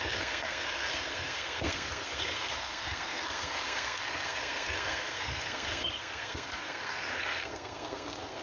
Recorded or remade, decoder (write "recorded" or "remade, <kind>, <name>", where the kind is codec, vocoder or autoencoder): remade, codec, SNAC